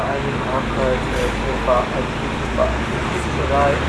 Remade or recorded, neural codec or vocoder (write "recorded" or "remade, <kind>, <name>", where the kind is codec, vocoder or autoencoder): recorded